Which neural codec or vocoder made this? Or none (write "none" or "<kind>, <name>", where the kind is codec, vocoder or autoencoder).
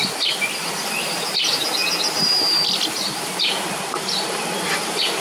none